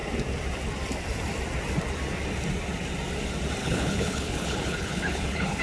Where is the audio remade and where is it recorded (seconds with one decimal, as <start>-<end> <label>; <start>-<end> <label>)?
0.0-3.6 recorded; 3.6-5.6 remade